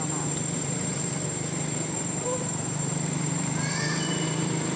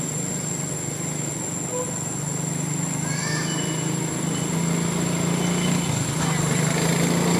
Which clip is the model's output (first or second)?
first